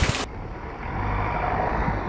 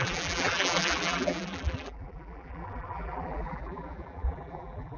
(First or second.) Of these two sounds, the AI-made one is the second